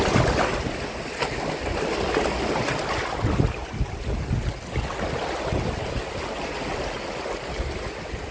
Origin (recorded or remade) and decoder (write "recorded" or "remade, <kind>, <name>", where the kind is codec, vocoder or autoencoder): recorded